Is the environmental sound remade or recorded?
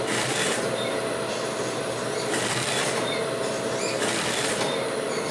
recorded